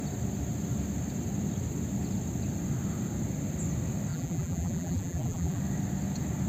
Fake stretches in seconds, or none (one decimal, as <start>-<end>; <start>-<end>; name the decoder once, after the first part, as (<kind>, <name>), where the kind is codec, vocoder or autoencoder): 4.1-5.6 (vocoder, BigVGAN v2)